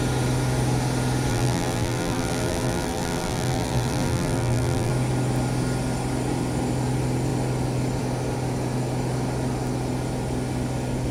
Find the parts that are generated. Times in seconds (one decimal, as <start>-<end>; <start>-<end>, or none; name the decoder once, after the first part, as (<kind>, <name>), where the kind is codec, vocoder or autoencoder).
1.3-4.9 (vocoder, BigVGAN v2)